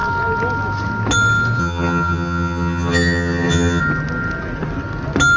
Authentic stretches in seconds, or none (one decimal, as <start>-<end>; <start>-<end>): 0.0-1.6; 3.8-5.4